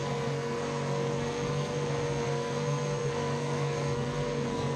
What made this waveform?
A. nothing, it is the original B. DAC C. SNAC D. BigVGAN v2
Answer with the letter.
C